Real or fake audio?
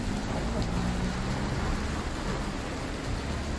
real